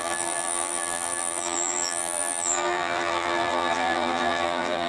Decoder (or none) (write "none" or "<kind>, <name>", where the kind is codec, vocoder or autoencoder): vocoder, BigVGAN v2